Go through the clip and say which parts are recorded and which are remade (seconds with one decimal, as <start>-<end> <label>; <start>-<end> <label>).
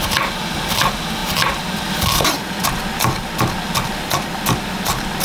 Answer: 0.0-5.2 recorded